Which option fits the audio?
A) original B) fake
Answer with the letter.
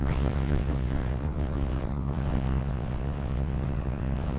B